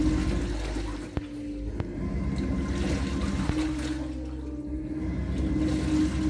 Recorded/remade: recorded